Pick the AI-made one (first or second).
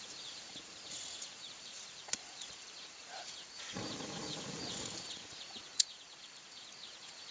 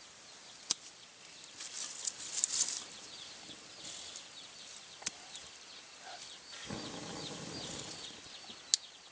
first